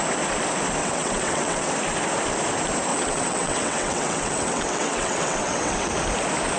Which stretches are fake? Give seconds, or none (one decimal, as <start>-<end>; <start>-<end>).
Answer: 0.8-1.7; 2.9-5.9